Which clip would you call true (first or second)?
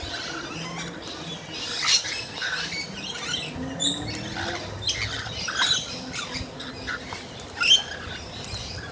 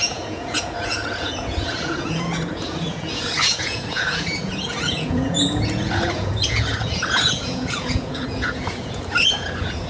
first